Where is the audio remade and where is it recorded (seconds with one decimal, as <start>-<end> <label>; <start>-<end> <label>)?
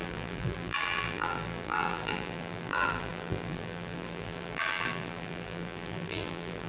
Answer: 0.0-6.7 remade